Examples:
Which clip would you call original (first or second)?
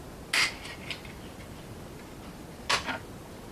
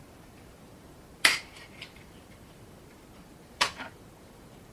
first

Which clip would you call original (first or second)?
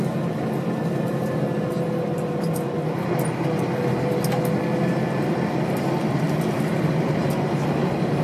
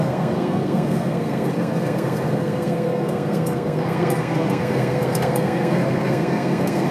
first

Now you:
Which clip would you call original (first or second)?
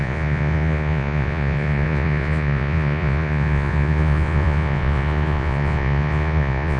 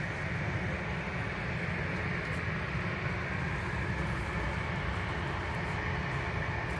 second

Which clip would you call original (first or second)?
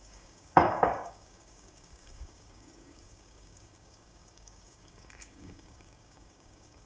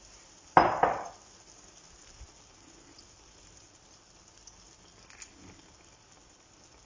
second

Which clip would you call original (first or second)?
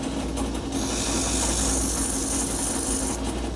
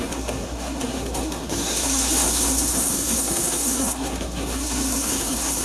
first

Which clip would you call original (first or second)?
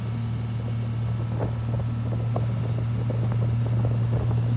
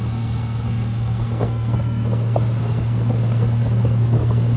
first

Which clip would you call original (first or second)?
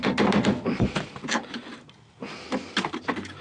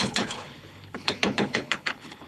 first